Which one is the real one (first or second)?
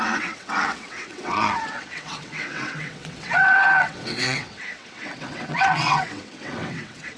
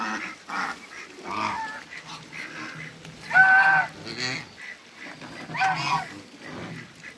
second